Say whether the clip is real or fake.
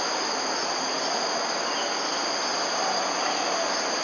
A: real